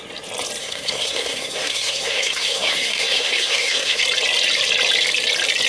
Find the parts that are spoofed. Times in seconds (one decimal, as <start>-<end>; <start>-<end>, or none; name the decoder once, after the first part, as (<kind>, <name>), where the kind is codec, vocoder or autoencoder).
0.6-4.0 (codec, SNAC)